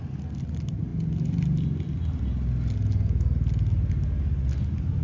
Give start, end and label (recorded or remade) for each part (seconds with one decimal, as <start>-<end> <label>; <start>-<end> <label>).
0.0-5.0 recorded